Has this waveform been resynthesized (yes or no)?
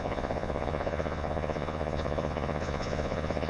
yes